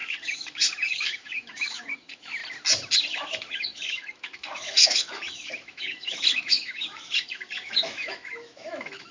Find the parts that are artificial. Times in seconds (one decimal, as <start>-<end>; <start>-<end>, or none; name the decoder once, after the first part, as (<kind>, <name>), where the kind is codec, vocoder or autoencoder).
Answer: 0.0-2.4 (autoencoder, DAC-VAE); 3.1-9.1